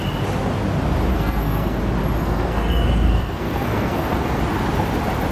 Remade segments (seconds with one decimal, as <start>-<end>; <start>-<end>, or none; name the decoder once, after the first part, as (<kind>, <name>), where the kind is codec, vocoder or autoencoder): 1.1-1.8 (codec, SNAC); 2.2-4.4